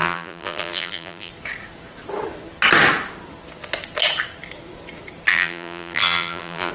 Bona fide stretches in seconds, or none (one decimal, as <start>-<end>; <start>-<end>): 1.3-5.3